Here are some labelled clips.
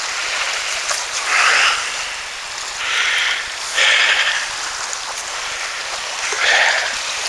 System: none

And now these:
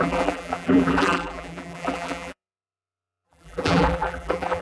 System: vocoder, BigVGAN v2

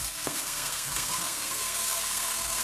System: codec, SNAC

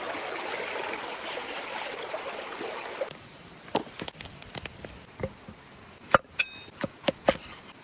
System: none